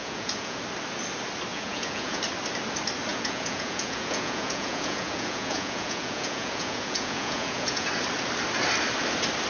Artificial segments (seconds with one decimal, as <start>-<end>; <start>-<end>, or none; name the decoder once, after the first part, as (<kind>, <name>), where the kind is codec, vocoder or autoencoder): 0.0-0.6 (vocoder, Vocos); 1.5-2.2; 3.1-7.9